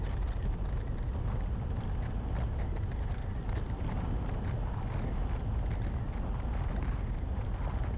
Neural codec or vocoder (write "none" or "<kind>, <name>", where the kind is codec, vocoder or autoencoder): none